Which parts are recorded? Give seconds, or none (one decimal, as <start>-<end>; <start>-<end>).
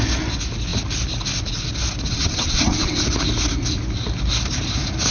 0.0-2.1; 3.0-5.1